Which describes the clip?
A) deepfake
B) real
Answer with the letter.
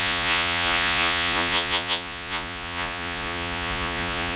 A